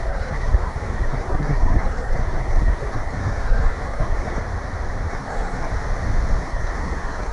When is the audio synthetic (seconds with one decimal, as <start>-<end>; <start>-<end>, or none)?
0.0-4.4; 5.1-5.7; 6.4-7.3